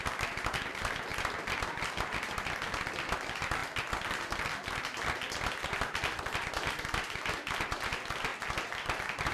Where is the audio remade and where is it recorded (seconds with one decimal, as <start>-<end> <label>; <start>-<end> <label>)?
0.0-3.6 remade; 3.6-5.6 recorded; 5.6-8.3 remade; 8.3-9.3 recorded